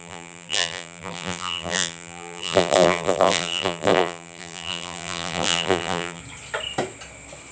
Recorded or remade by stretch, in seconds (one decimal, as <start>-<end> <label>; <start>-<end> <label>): 0.0-6.2 remade; 6.2-7.5 recorded